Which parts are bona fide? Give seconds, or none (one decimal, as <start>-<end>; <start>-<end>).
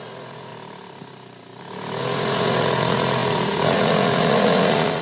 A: 0.5-2.0